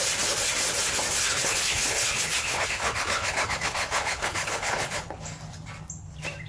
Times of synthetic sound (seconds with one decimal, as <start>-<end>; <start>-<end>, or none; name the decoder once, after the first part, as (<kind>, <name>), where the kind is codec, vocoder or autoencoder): 1.3-5.2 (codec, HILCodec)